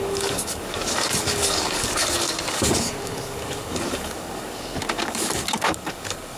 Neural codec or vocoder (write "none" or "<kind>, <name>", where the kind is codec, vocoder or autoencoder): codec, DAC